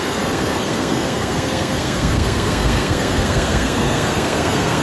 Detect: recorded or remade remade